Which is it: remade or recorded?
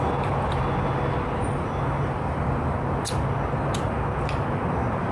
recorded